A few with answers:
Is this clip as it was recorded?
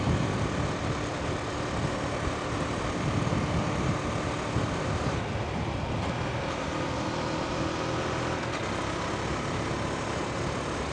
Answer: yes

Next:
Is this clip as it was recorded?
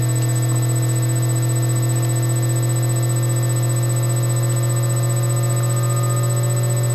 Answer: yes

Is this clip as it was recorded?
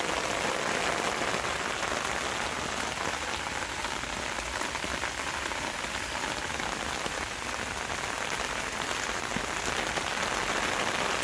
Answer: yes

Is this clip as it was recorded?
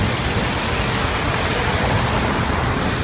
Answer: yes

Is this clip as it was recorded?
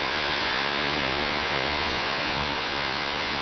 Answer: no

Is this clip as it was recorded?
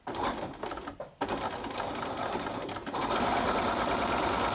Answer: yes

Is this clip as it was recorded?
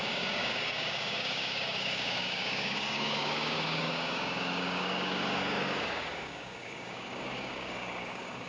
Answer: no